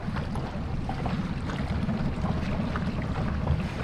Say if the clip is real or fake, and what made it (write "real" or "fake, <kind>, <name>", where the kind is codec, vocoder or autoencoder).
real